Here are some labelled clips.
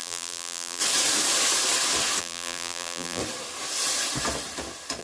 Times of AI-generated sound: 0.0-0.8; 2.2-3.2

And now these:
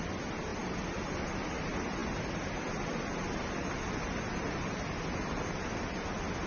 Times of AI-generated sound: none

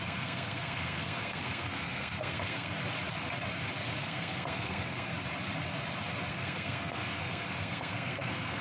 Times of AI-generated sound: 0.0-2.7; 4.0-5.1; 6.3-8.6

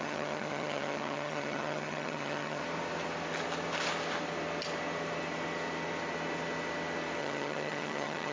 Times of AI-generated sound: 0.0-2.6; 7.2-8.3

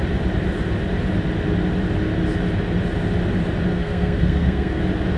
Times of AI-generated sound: 3.7-4.8